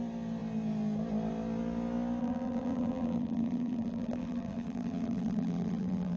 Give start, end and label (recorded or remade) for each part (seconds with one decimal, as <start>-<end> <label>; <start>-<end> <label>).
0.0-2.2 recorded; 2.2-6.2 remade